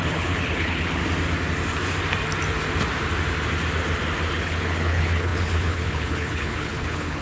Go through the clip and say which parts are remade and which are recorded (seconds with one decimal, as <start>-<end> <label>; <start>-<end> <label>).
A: 0.0-1.0 remade; 1.0-4.3 recorded; 4.3-7.2 remade